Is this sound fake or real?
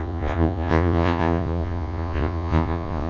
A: fake